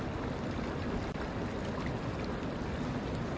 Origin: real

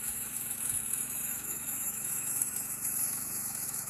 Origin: fake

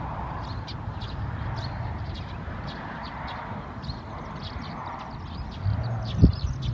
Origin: real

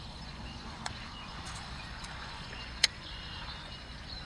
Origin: fake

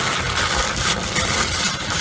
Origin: real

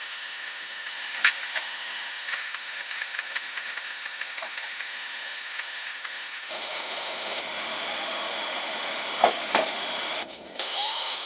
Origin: fake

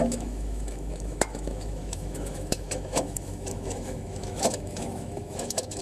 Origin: fake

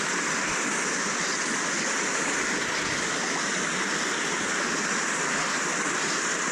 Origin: real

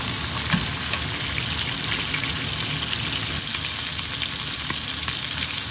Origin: real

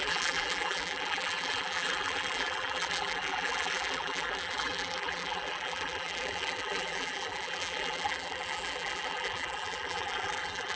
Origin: fake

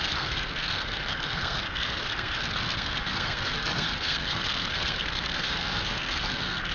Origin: fake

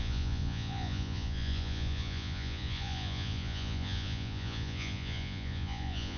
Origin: fake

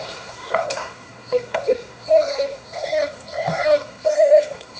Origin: fake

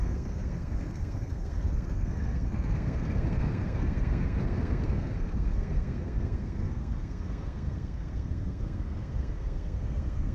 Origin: fake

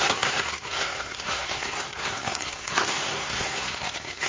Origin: fake